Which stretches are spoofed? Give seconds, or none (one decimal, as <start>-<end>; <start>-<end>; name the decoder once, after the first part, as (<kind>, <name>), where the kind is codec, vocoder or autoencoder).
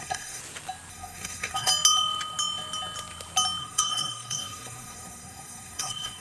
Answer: 0.0-0.4 (codec, SNAC); 0.9-1.7; 3.6-6.2